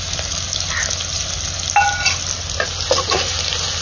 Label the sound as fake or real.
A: real